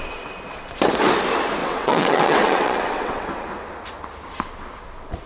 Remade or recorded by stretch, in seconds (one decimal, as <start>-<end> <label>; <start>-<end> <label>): 0.0-1.6 recorded; 1.6-3.3 remade; 3.3-5.3 recorded